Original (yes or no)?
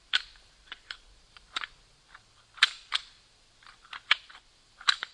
no